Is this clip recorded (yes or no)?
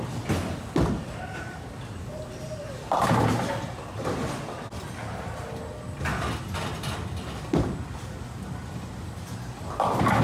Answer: yes